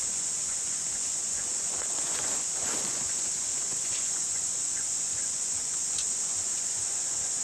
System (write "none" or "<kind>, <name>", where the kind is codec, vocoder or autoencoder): vocoder, Vocos